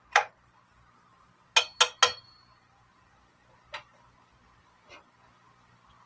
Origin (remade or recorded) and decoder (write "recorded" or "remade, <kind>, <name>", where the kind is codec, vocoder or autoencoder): recorded